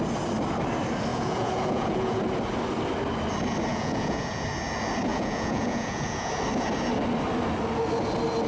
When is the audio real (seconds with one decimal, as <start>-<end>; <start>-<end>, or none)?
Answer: 0.0-1.1; 2.2-3.7; 4.4-5.1; 6.3-8.5